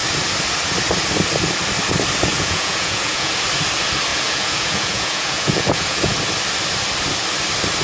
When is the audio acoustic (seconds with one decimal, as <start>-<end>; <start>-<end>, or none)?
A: 0.0-2.3; 3.3-4.1; 6.2-7.8